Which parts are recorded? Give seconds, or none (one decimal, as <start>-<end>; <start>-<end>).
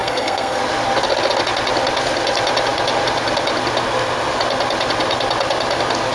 0.6-6.1